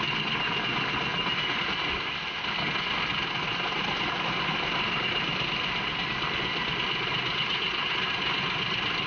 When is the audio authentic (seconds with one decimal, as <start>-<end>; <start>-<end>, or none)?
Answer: 0.0-9.1